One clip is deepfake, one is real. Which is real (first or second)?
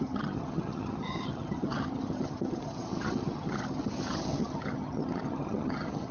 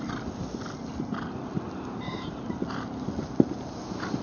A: second